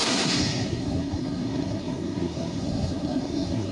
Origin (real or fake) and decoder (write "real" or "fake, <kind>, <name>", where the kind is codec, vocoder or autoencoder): fake, codec, SNAC